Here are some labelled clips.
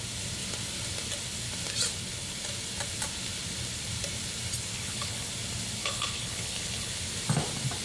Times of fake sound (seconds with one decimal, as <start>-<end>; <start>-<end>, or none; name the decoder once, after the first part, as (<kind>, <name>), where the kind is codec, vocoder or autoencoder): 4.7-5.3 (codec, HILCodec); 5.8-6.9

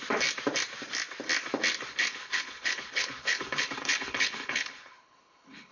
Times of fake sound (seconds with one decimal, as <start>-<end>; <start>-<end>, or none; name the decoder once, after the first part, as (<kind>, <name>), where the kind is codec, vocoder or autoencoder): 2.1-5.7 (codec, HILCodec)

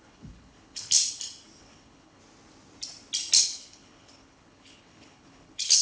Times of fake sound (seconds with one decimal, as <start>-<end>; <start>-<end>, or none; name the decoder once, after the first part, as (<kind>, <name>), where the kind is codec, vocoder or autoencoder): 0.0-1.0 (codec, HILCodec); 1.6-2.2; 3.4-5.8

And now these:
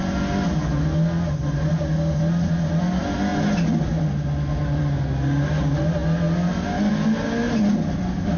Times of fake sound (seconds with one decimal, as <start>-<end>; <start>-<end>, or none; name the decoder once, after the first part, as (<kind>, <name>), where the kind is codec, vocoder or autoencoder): none

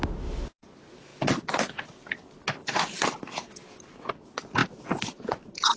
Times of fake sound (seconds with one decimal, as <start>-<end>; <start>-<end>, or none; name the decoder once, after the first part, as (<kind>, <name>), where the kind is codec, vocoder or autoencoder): none

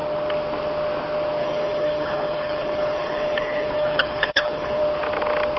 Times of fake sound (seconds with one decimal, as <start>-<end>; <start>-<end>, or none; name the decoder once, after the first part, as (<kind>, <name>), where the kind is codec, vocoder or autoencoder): 1.4-4.8 (codec, HILCodec)